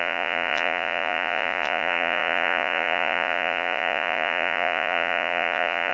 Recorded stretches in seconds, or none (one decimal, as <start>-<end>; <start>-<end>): none